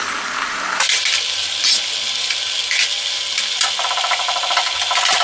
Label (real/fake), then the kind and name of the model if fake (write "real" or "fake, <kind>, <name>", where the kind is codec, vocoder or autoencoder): real